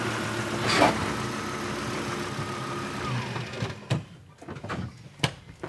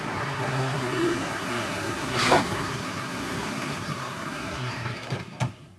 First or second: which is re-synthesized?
second